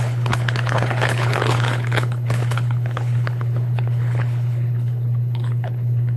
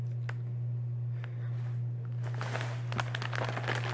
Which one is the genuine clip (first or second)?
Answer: second